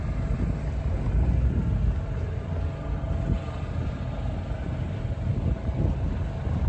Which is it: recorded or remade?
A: recorded